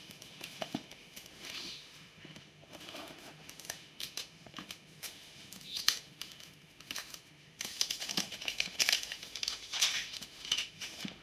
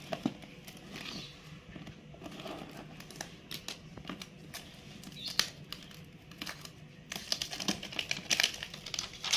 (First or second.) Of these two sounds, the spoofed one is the first